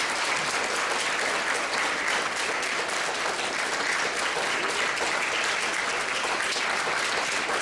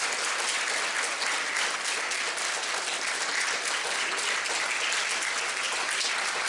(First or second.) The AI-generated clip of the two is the first